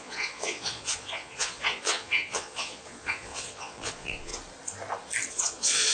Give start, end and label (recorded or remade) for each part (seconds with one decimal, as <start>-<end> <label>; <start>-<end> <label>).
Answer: 0.0-4.3 remade; 4.3-5.3 recorded; 5.3-5.9 remade